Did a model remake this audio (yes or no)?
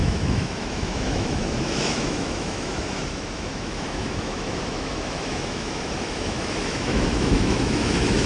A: yes